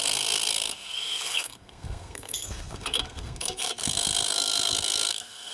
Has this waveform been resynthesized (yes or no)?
yes